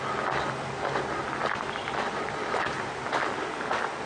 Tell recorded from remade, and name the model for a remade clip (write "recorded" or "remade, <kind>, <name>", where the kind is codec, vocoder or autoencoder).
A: recorded